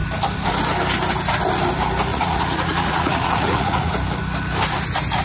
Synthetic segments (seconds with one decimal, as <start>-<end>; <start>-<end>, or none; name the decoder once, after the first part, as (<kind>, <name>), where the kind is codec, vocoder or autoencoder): 2.1-3.9 (vocoder, Vocos)